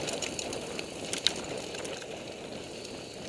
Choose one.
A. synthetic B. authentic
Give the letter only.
B